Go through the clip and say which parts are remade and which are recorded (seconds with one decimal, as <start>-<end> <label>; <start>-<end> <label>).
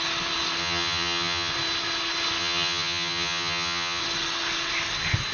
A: 0.0-0.6 recorded; 0.6-1.5 remade; 1.5-2.4 recorded; 2.4-4.0 remade; 4.0-5.3 recorded